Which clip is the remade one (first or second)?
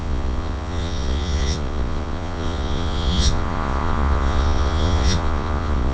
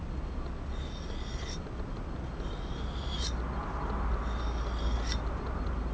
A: first